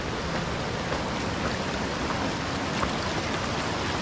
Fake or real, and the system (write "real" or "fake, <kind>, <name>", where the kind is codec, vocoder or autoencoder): real